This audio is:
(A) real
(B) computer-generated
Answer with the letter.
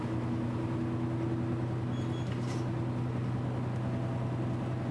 A